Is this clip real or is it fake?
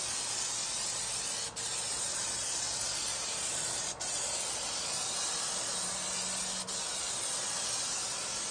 real